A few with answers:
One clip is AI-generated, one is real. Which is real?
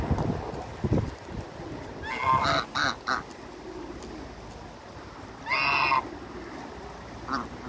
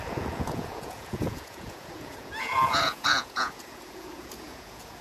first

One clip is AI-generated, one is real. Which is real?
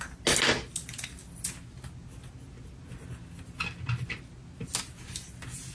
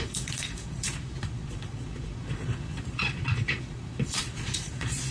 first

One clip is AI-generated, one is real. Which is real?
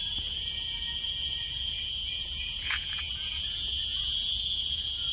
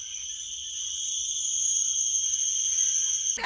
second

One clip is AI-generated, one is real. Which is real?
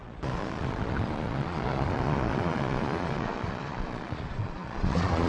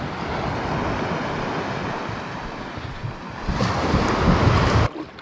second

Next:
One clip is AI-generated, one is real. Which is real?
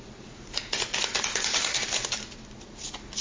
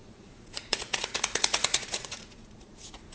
first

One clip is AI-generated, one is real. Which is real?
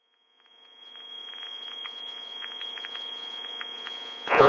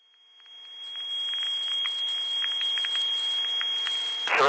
second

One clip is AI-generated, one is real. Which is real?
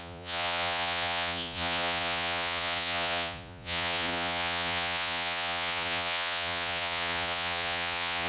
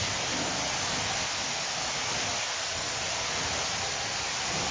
second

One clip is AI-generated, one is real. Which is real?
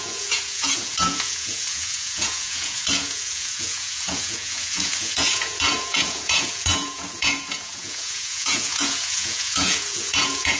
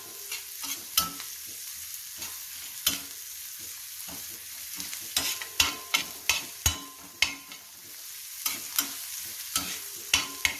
second